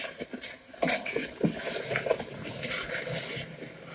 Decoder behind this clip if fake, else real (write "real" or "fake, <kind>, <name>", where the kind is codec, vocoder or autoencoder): real